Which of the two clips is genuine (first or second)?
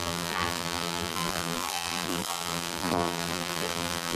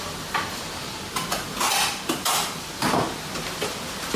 second